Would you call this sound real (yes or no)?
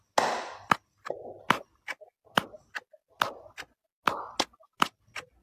yes